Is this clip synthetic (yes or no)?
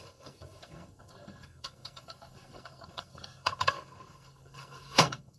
yes